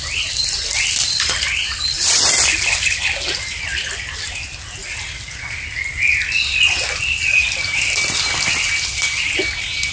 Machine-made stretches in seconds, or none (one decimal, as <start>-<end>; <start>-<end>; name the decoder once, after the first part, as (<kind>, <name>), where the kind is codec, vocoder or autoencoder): none